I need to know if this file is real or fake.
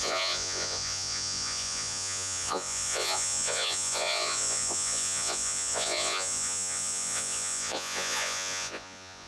fake